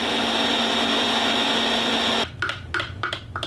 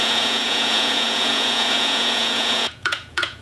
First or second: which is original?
first